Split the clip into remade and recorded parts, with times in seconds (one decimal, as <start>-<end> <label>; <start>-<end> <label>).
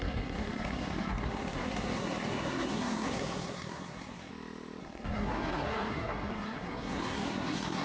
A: 0.0-4.3 remade; 4.3-4.8 recorded; 4.8-7.8 remade